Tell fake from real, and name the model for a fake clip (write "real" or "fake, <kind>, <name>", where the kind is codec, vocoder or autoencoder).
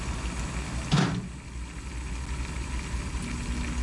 real